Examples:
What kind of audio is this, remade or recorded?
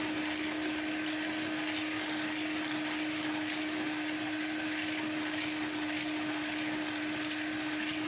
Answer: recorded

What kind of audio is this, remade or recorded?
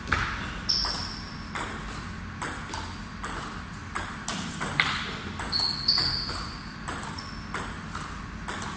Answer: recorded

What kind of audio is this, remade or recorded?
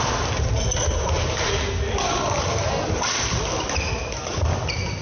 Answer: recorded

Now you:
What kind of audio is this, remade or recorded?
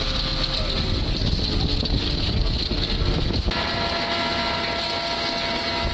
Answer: recorded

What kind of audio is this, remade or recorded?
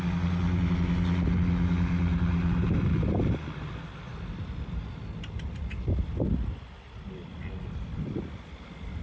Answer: recorded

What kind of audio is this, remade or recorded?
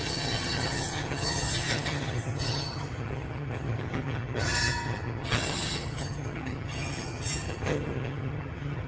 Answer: remade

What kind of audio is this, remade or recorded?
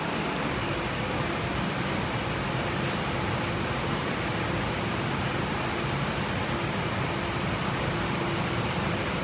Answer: recorded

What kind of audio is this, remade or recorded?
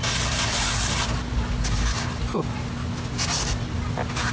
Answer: recorded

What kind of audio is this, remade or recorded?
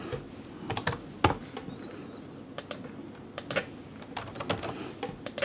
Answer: recorded